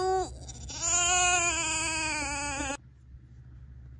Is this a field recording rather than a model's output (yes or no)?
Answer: yes